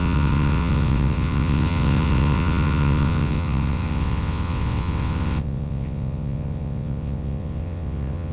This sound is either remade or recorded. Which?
remade